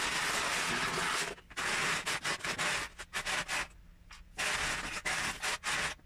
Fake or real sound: real